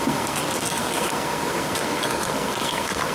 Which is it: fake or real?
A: fake